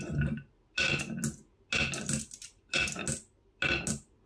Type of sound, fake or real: real